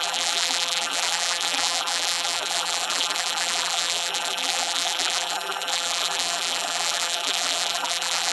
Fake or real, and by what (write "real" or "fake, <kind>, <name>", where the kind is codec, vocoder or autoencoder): fake, vocoder, BigVGAN v2